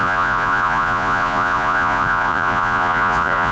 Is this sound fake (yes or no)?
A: yes